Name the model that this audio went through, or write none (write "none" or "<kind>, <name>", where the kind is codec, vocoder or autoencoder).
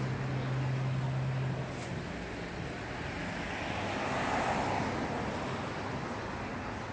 none